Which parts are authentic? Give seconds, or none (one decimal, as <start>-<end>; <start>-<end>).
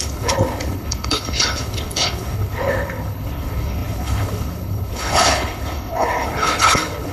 none